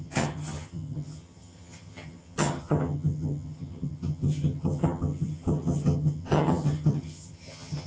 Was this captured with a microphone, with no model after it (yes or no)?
no